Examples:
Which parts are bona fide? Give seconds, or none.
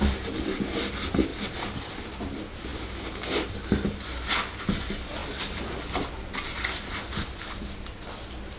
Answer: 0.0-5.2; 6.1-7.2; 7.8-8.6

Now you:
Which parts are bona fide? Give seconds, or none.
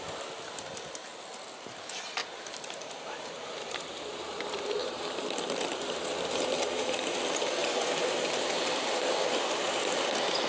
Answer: 0.0-2.2; 6.9-7.6; 9.8-10.5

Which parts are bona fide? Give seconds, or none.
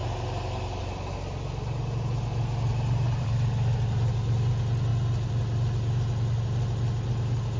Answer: 0.0-2.7; 4.5-4.9; 7.1-7.6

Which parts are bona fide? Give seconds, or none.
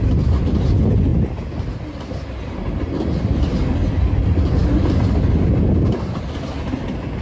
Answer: 0.0-7.2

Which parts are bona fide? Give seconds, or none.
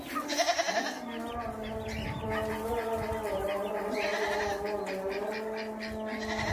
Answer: 0.0-6.5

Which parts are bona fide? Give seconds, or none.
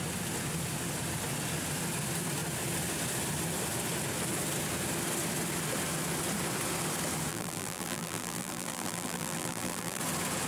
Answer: 0.0-7.3; 10.0-10.5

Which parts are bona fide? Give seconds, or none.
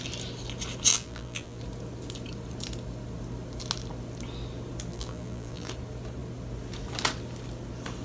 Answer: 0.0-0.9; 1.6-4.9; 5.7-8.0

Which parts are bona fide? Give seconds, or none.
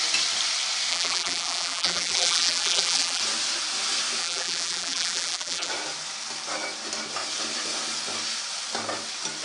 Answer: 0.0-0.9; 3.2-4.2; 5.7-9.4